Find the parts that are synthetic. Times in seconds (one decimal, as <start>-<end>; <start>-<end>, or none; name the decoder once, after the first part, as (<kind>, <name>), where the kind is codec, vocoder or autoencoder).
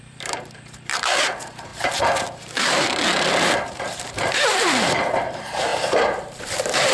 0.0-6.9 (vocoder, BigVGAN v2)